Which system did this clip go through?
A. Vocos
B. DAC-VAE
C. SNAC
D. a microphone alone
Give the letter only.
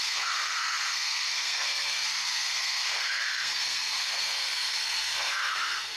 C